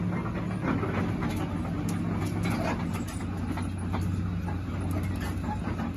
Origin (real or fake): real